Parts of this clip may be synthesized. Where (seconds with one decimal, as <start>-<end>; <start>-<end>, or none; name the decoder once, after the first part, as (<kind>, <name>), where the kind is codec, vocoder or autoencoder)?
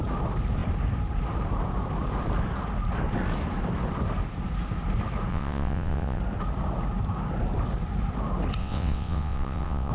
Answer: 5.3-6.2 (vocoder, WaveNeXt); 8.6-9.9